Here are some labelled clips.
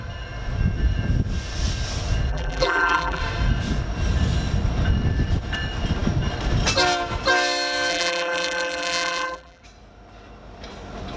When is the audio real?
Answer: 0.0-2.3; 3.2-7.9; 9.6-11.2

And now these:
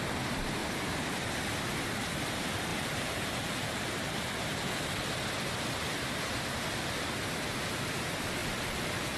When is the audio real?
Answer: 0.0-0.6; 1.2-2.7; 4.7-8.4

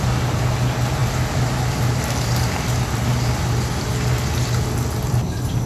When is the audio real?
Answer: 0.0-5.7